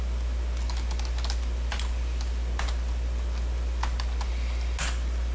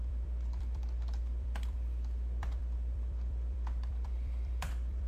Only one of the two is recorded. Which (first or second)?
first